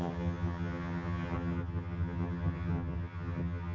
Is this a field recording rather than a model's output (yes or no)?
no